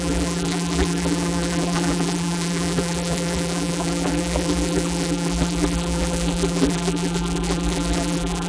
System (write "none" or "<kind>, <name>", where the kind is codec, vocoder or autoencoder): vocoder, BigVGAN v2